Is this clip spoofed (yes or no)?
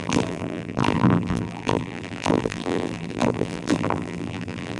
yes